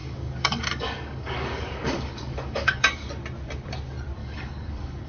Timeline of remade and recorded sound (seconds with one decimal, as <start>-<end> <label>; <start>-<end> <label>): 0.0-3.1 remade; 3.1-4.2 recorded; 4.2-5.1 remade